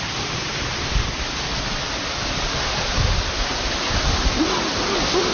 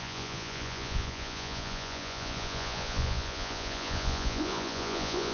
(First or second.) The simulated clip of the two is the second